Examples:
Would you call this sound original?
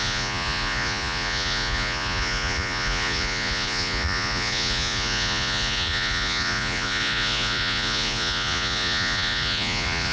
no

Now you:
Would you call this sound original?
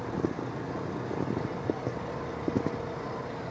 yes